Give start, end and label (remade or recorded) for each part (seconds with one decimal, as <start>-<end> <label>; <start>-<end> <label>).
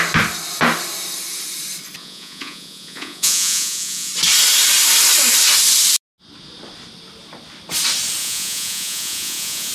0.0-2.0 recorded; 2.0-4.1 remade; 4.1-8.2 recorded; 8.2-9.7 remade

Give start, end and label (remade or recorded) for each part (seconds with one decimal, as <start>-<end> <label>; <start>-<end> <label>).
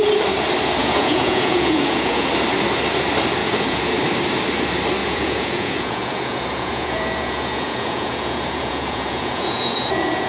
0.0-0.8 recorded; 0.8-2.3 remade; 2.3-3.4 recorded; 3.4-3.9 remade; 3.9-5.0 recorded; 5.0-10.3 remade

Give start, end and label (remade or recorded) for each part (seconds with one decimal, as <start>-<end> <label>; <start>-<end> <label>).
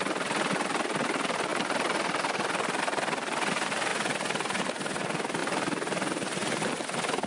0.0-7.3 recorded